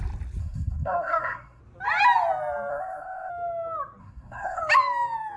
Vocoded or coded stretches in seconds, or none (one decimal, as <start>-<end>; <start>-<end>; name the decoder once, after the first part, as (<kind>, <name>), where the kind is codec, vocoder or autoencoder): 0.4-1.6 (codec, SNAC); 2.7-3.3; 4.0-4.6